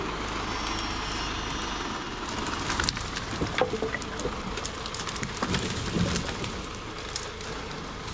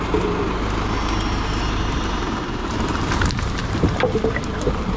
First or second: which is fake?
second